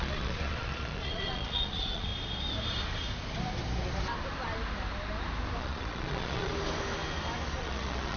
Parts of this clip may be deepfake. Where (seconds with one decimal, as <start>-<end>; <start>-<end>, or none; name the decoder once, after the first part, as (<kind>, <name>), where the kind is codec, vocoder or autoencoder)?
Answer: 0.0-2.1 (vocoder, Vocos); 5.6-6.5; 7.6-8.2